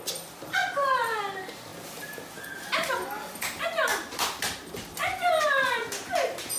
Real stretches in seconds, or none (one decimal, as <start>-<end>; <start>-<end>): 0.0-0.6; 1.2-5.0